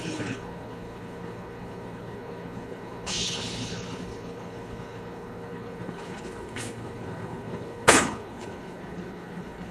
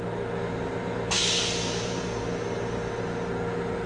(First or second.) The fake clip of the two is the first